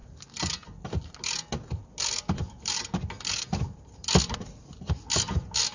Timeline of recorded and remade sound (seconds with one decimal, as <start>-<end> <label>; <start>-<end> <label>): 0.0-5.7 recorded